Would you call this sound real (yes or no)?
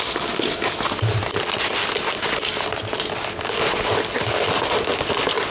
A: yes